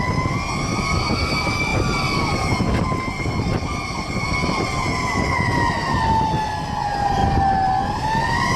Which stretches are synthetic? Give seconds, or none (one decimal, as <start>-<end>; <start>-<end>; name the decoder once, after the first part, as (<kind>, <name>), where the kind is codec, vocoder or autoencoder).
none